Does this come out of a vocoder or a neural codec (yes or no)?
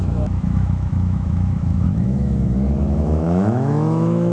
yes